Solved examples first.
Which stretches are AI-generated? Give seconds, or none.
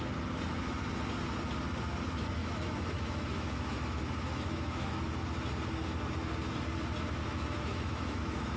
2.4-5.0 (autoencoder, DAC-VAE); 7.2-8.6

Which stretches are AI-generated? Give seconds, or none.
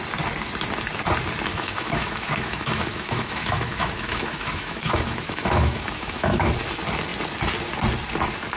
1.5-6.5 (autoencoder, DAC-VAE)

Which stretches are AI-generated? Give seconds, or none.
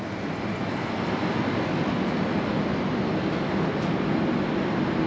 none